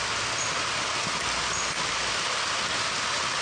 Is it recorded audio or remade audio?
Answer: recorded